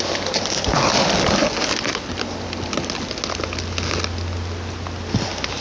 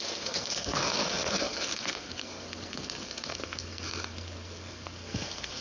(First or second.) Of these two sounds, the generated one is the second